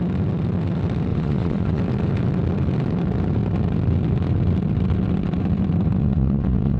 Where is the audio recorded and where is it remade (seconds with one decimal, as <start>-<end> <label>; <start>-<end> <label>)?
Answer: 0.0-1.1 recorded; 1.1-1.8 remade; 1.8-6.0 recorded; 6.0-6.8 remade